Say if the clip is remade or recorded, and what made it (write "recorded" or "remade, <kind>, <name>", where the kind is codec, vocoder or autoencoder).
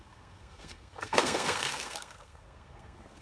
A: remade, codec, SNAC